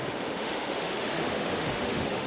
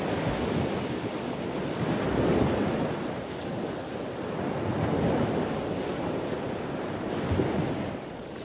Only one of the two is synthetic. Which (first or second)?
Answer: first